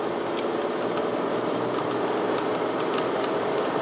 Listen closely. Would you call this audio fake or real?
real